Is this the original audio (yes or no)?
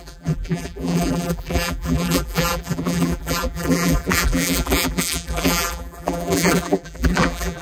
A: no